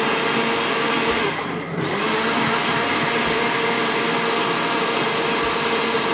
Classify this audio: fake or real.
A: real